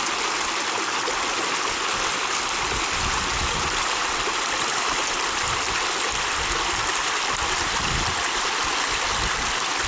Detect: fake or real real